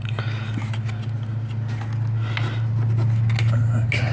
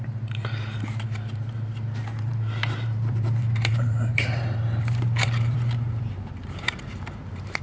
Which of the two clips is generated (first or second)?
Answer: second